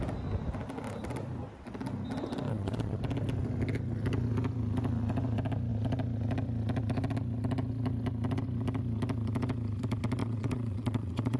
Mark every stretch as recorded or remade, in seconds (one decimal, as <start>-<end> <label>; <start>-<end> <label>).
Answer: 0.0-2.5 recorded; 2.5-3.0 remade; 3.0-10.2 recorded; 10.2-11.4 remade